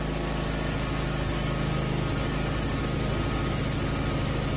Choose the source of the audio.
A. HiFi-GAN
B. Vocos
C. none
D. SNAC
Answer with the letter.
C